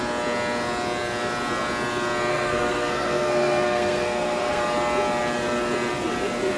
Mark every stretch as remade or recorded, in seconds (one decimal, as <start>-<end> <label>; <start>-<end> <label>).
0.0-2.3 recorded; 2.3-4.6 remade; 4.6-6.6 recorded